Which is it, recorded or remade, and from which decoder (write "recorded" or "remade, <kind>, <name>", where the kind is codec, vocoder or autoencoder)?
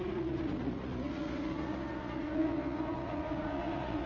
remade, vocoder, Vocos